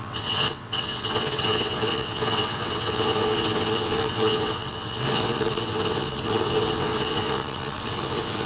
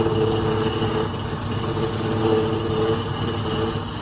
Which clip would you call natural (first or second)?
second